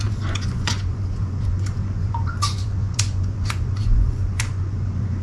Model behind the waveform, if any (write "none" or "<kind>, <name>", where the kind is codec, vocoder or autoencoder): vocoder, Vocos